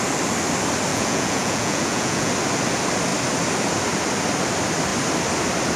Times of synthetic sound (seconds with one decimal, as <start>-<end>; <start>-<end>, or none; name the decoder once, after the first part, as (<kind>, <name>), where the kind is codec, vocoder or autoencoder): 0.9-2.3 (vocoder, Vocos)

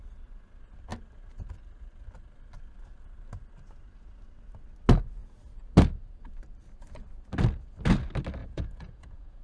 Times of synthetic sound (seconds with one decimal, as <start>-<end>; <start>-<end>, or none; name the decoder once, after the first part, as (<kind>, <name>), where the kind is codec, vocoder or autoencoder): 8.4-9.4 (vocoder, Vocos)

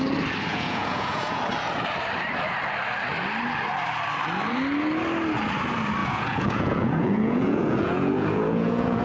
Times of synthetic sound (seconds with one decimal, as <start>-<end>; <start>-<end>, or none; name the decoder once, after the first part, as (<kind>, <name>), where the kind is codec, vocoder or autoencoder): 0.5-1.4 (vocoder, Vocos); 6.0-9.0

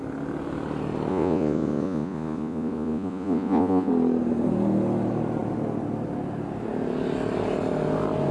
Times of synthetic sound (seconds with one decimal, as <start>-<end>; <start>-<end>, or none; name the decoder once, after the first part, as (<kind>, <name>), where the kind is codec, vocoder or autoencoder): 1.1-3.9 (vocoder, Vocos)

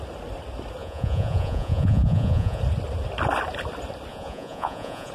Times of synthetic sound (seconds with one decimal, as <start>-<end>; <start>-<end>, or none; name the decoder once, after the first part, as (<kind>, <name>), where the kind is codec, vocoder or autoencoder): 0.8-2.6 (vocoder, Vocos); 4.1-5.1

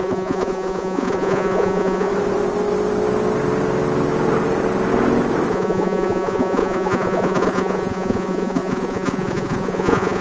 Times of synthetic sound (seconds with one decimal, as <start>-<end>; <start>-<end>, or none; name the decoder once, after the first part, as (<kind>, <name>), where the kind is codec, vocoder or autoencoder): 0.0-2.1 (vocoder, Vocos); 5.5-10.2

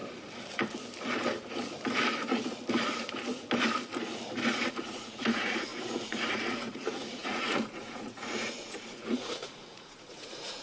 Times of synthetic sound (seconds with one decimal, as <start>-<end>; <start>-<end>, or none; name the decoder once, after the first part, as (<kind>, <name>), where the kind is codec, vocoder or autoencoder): 4.7-10.6 (vocoder, Vocos)